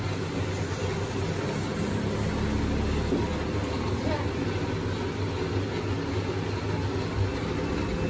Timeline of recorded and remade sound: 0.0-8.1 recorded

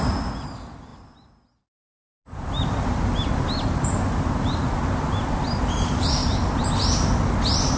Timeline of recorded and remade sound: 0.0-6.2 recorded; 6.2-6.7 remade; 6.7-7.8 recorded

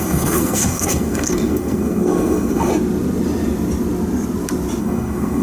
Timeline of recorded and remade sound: 0.0-2.7 remade; 2.7-4.8 recorded; 4.8-5.4 remade